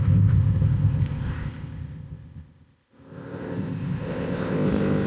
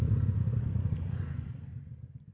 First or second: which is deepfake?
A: first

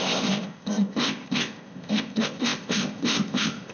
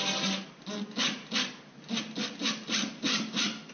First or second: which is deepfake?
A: first